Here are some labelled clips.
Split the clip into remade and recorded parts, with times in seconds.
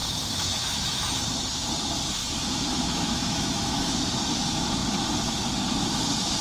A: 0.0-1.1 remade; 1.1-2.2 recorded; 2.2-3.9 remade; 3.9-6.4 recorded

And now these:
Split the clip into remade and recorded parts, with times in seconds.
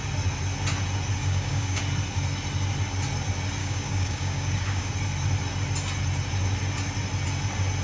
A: 0.0-1.2 recorded; 1.2-1.8 remade; 1.8-3.6 recorded; 3.6-4.9 remade; 4.9-7.8 recorded